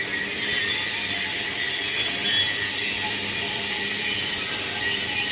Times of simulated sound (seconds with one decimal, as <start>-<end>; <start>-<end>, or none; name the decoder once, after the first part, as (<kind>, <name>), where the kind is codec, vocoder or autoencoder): 0.0-5.3 (vocoder, BigVGAN v2)